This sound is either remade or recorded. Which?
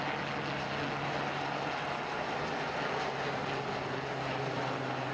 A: recorded